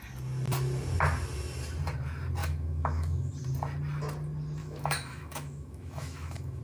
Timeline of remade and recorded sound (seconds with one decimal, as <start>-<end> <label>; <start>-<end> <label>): 0.0-2.4 recorded; 2.4-3.3 remade; 3.3-4.6 recorded; 4.6-6.6 remade